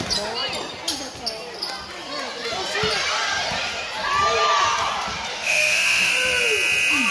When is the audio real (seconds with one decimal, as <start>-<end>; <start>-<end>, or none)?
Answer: 0.0-5.3; 6.1-7.1